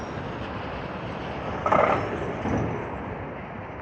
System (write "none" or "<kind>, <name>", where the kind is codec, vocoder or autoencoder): none